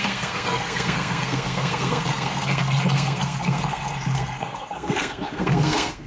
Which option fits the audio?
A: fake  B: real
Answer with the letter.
A